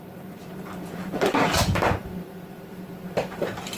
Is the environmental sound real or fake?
fake